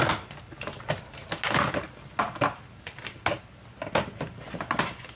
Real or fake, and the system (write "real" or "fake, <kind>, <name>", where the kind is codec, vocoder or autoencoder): real